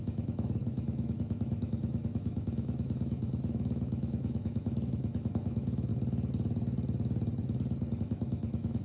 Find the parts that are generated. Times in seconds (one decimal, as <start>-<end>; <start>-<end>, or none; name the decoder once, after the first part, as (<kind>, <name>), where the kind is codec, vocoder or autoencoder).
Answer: 0.0-5.9 (autoencoder, DAC-VAE); 8.0-8.8